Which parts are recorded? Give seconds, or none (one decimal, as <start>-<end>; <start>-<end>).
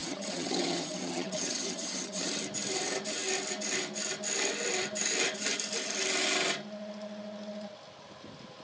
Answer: 2.3-8.6